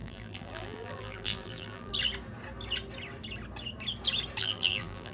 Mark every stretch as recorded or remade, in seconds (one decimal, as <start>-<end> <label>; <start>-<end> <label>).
0.0-1.9 remade; 1.9-4.4 recorded; 4.4-5.1 remade